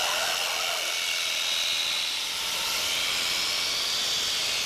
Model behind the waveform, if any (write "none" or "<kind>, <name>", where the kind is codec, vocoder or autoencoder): none